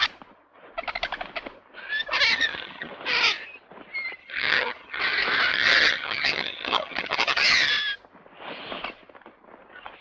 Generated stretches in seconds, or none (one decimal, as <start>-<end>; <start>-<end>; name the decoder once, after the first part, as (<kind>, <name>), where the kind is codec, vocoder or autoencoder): 2.3-2.9 (vocoder, HiFi-GAN); 4.2-5.0; 5.5-7.7